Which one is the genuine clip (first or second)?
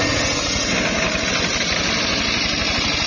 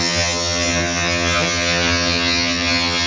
first